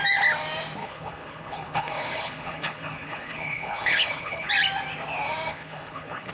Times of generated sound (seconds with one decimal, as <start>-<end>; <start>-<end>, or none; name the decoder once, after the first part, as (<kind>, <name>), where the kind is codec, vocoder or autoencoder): 0.8-4.5 (codec, HILCodec); 5.5-6.3